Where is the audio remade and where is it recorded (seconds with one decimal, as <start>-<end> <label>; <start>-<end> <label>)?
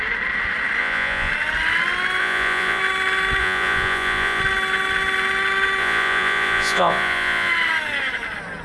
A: 0.0-0.8 recorded; 0.8-1.3 remade; 1.3-2.2 recorded; 2.2-2.8 remade; 2.8-3.4 recorded; 3.4-4.4 remade; 4.4-5.8 recorded; 5.8-7.5 remade; 7.5-8.6 recorded